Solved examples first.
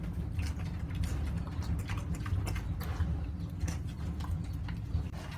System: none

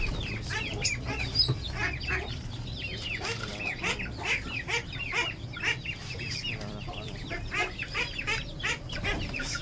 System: vocoder, BigVGAN v2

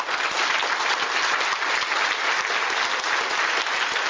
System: none